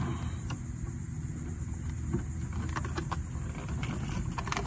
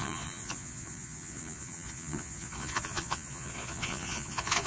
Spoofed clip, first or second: second